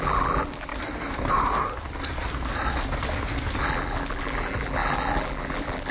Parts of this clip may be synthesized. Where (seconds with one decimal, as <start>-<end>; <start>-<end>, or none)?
0.0-0.7; 3.6-5.9